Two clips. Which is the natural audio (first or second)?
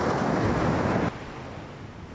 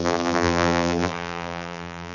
first